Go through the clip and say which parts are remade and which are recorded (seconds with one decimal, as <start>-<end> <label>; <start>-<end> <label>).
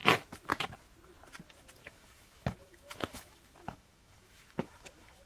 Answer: 0.0-1.8 recorded; 1.8-5.3 remade